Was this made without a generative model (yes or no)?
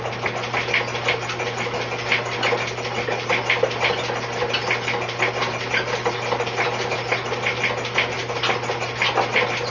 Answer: yes